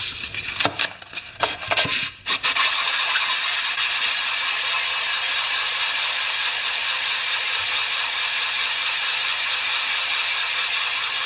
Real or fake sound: real